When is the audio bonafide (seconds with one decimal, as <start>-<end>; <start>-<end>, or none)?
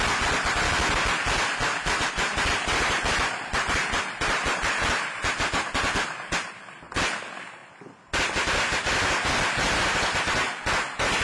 0.0-11.2